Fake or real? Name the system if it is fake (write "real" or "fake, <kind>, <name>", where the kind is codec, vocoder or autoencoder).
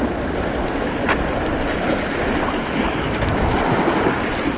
real